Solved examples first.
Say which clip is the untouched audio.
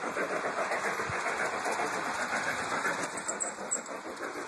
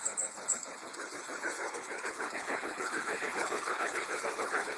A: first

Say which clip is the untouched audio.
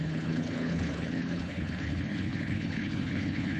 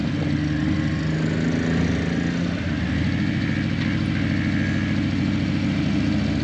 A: second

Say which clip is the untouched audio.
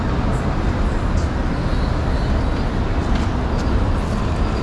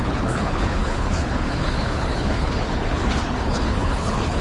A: first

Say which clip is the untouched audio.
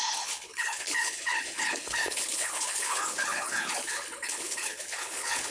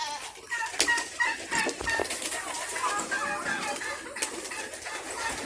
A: second